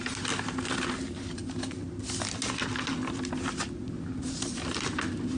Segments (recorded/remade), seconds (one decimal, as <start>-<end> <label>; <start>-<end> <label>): 0.0-5.4 recorded

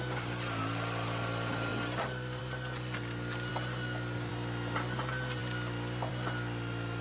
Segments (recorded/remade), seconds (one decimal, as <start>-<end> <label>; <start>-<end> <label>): 0.0-7.0 recorded

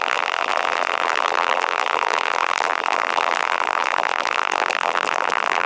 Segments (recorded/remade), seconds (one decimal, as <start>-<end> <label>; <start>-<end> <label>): 0.0-5.7 remade

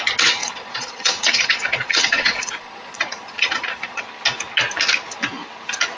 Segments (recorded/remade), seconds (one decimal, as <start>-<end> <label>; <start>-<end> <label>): 0.0-0.4 recorded; 0.4-4.0 remade; 4.0-6.0 recorded